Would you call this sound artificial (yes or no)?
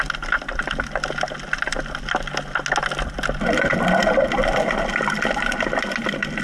no